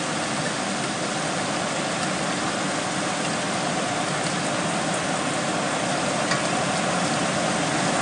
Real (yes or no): yes